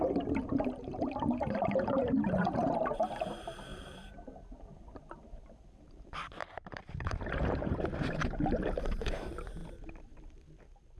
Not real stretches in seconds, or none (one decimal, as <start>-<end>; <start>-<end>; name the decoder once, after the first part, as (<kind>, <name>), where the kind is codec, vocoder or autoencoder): 0.0-9.6 (vocoder, BigVGAN v2)